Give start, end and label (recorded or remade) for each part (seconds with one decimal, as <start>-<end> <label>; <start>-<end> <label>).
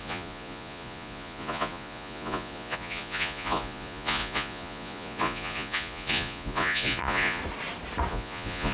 0.0-7.4 remade; 7.4-8.1 recorded; 8.1-8.7 remade